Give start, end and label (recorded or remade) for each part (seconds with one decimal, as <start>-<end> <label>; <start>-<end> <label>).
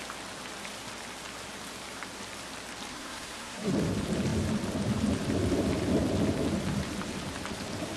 0.0-2.9 recorded; 2.9-3.7 remade; 3.7-8.0 recorded